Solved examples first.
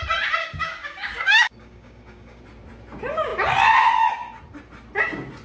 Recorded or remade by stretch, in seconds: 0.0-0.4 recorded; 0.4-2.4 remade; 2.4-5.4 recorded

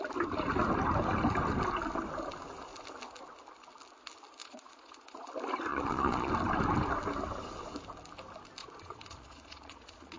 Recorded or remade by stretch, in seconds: 0.0-4.4 recorded; 4.4-5.3 remade; 5.3-5.7 recorded; 5.7-6.3 remade; 6.3-8.6 recorded; 8.6-10.2 remade

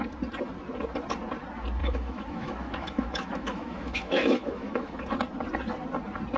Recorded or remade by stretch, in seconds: 0.0-1.8 recorded; 1.8-5.0 remade; 5.0-6.4 recorded

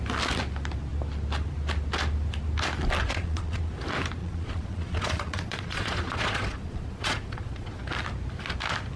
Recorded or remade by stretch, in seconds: 0.0-3.0 recorded; 3.0-3.6 remade; 3.6-4.2 recorded; 4.2-7.8 remade; 7.8-9.0 recorded

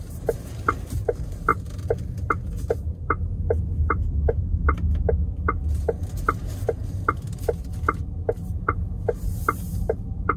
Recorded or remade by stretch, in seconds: 0.0-1.5 remade; 1.5-4.2 recorded; 4.2-10.4 remade